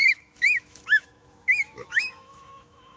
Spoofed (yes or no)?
yes